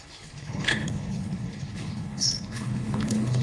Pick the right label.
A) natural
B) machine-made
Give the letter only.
B